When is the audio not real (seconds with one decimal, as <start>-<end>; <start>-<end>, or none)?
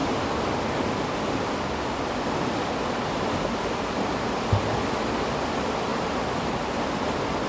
5.9-6.8